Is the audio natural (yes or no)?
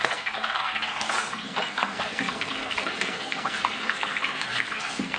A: no